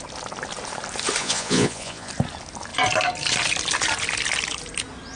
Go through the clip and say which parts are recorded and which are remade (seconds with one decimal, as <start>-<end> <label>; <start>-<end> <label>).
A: 0.0-1.2 recorded; 1.2-2.1 remade; 2.1-5.2 recorded